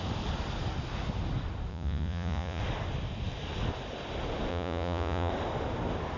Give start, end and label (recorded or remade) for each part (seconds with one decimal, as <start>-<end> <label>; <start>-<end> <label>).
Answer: 0.0-1.7 recorded; 1.7-2.6 remade; 2.6-4.5 recorded; 4.5-5.3 remade; 5.3-6.2 recorded